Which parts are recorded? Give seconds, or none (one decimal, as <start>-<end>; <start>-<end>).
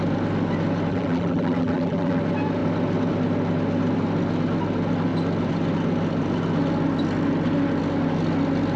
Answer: 0.0-0.9; 2.2-8.8